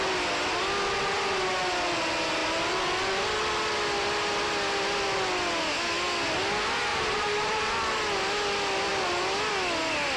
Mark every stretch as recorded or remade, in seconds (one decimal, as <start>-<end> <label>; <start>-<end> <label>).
0.0-6.9 recorded; 6.9-7.6 remade; 7.6-10.2 recorded